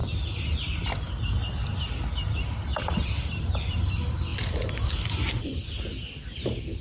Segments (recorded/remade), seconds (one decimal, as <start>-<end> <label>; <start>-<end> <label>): 0.0-4.3 recorded; 4.3-5.7 remade; 5.7-6.8 recorded